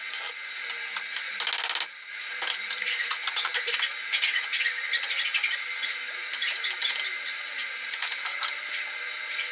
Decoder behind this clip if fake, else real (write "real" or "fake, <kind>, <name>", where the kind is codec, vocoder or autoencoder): real